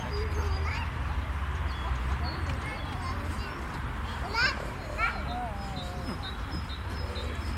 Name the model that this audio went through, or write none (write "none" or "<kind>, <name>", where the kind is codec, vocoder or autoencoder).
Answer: none